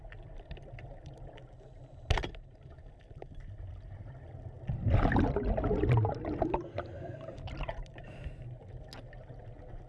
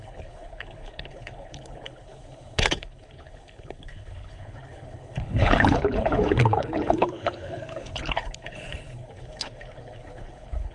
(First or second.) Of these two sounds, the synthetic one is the second